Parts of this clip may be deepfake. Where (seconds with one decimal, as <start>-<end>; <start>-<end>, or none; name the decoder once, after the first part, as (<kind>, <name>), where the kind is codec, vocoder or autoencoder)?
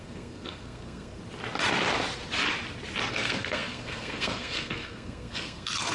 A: 0.0-1.2 (codec, SNAC); 3.1-5.9